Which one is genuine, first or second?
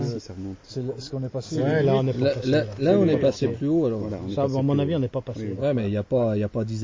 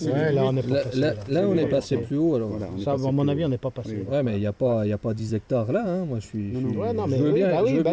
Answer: first